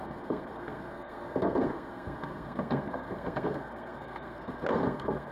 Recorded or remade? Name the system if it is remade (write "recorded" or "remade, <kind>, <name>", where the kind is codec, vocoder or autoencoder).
remade, codec, SNAC